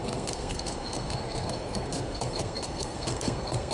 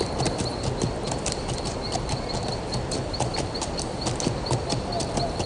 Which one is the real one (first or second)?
second